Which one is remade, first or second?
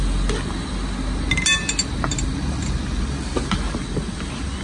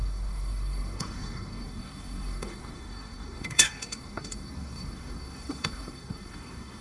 second